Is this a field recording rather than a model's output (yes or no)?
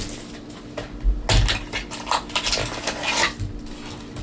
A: yes